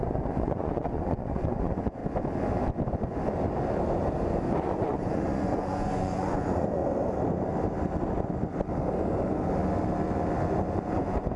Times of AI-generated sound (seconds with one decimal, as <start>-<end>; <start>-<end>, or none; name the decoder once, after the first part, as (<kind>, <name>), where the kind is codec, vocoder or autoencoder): 0.0-2.0 (vocoder, Vocos); 4.6-6.8; 10.9-11.4